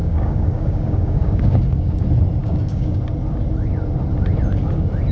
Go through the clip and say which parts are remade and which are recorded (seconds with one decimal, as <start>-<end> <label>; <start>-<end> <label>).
0.0-2.0 remade; 2.0-2.4 recorded; 2.4-3.0 remade; 3.0-5.1 recorded